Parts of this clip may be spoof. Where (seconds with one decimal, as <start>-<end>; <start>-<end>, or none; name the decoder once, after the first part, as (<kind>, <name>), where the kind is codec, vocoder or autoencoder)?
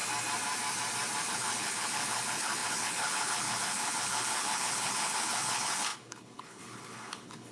1.3-7.5 (codec, HILCodec)